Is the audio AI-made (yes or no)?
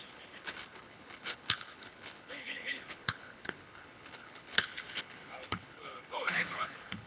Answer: yes